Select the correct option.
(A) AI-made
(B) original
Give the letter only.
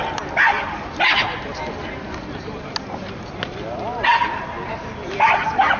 B